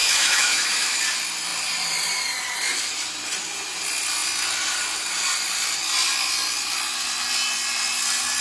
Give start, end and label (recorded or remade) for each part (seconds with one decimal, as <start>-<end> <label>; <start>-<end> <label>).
0.0-1.0 remade; 1.0-8.4 recorded